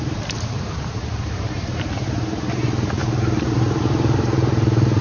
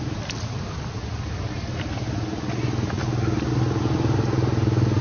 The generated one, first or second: first